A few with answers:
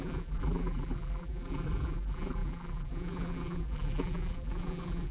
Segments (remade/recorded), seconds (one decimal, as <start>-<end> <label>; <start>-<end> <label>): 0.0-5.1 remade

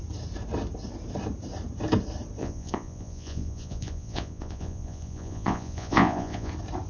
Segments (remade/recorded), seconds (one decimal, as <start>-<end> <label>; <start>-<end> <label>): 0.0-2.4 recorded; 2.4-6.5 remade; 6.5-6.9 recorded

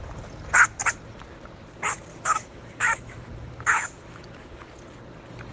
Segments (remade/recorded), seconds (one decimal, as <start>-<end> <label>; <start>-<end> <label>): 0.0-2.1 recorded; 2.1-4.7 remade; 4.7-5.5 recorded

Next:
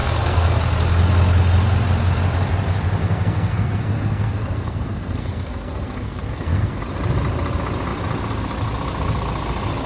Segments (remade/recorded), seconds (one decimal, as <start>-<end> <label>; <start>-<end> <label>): 0.0-0.6 remade; 0.6-3.0 recorded; 3.0-6.8 remade; 6.8-9.9 recorded